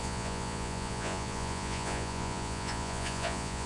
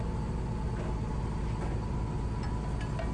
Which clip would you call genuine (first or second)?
second